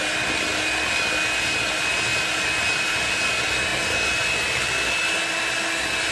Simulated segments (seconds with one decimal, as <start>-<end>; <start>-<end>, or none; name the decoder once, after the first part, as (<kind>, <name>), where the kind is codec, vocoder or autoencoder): none